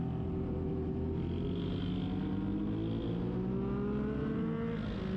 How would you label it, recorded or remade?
recorded